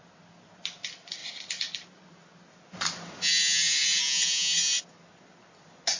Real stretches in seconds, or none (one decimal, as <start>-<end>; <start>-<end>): 0.0-6.0